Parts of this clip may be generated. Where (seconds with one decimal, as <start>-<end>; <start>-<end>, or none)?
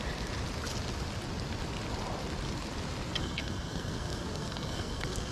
3.2-5.3